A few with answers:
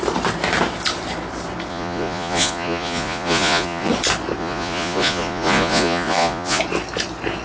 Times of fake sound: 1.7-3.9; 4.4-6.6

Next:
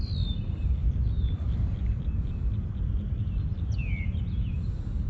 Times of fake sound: none

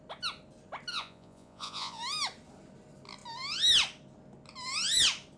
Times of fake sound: 0.9-2.0

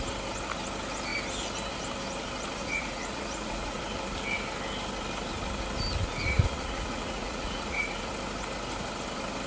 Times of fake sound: 2.6-3.8; 6.0-8.1

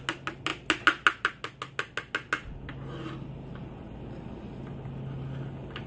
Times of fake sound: none

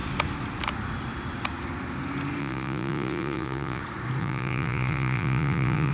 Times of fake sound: 2.4-3.8; 4.2-5.9

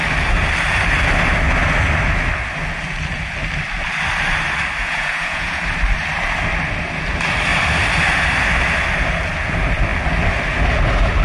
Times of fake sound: 4.8-5.6